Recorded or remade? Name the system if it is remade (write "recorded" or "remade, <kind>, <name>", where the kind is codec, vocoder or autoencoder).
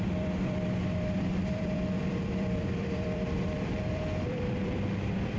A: remade, vocoder, BigVGAN v2